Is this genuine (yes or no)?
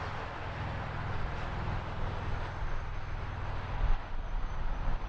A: yes